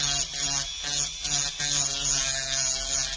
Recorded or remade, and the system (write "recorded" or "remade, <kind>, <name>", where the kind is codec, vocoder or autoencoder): recorded